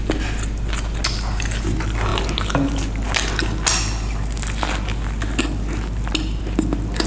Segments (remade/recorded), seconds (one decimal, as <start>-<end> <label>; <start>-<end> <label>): 0.0-7.1 recorded